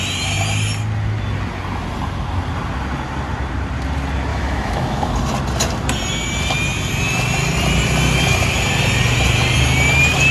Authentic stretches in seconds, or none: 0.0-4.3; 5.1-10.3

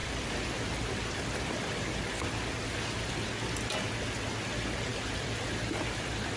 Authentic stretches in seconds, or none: 2.2-4.9

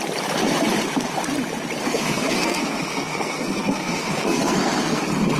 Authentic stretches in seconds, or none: 0.0-1.8; 5.0-5.4

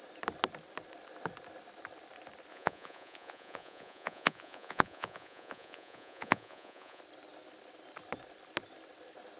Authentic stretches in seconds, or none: 0.0-2.5; 7.0-9.4

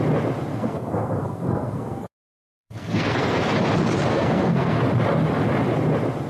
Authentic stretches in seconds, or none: 0.0-0.5; 3.5-4.1; 4.8-6.3

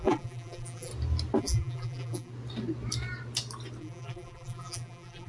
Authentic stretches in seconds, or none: 0.9-1.4; 2.3-3.8

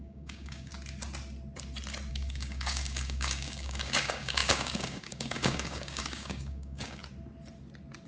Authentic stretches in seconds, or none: 0.7-2.1; 7.0-8.1

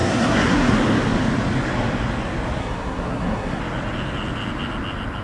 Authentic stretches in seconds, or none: 0.7-2.6; 3.6-5.2